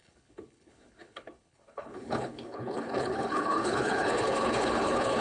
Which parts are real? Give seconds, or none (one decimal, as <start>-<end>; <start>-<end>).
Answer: none